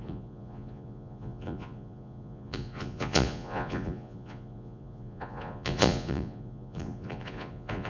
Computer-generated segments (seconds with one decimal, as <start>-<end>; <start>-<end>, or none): 0.0-7.9